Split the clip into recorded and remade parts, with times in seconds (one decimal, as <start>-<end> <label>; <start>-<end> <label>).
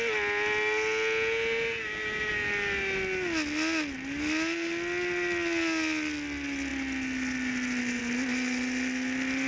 0.0-9.5 recorded